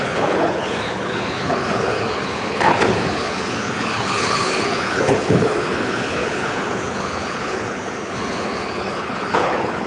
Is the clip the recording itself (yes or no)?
no